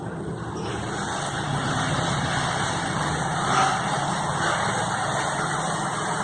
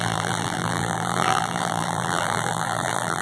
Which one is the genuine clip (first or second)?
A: first